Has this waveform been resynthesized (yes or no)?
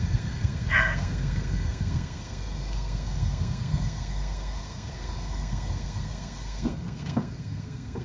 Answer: yes